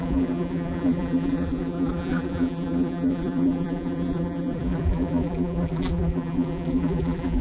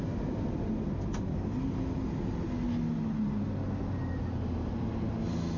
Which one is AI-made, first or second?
first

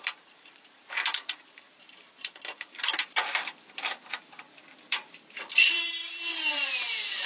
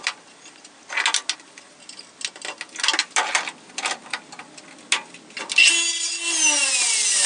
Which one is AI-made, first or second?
first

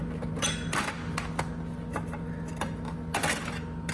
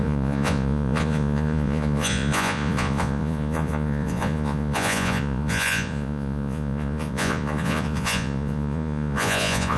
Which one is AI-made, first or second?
second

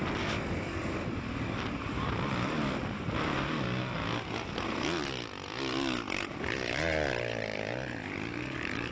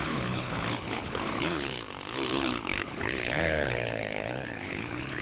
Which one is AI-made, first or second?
second